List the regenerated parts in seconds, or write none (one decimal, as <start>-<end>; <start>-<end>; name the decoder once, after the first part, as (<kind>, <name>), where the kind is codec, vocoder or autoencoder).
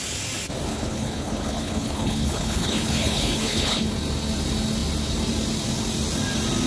0.7-3.9 (codec, HILCodec)